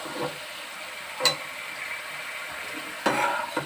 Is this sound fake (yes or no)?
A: no